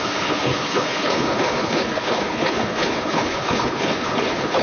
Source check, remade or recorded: remade